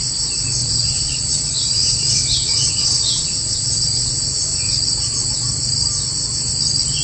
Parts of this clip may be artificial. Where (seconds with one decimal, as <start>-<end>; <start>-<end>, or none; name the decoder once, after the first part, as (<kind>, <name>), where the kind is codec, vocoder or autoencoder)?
0.6-4.1 (vocoder, WaveNeXt)